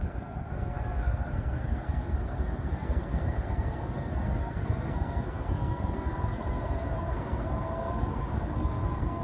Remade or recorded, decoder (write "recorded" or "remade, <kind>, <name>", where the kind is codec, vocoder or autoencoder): remade, codec, SNAC